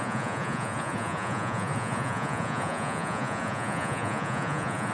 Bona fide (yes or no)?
no